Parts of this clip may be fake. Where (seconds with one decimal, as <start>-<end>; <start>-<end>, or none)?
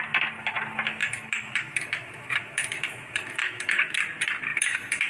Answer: 1.0-4.0; 4.5-5.1